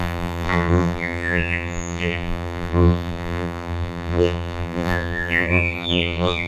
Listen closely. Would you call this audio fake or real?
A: fake